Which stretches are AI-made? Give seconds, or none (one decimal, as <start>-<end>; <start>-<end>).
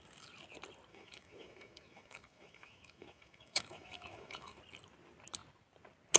0.9-4.6